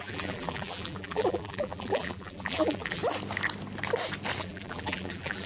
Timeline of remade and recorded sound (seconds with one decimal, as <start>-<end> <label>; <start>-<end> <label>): 0.0-3.0 remade; 3.0-4.4 recorded; 4.4-5.5 remade